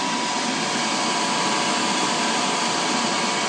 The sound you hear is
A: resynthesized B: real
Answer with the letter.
B